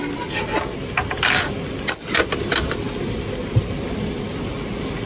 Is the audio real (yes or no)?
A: yes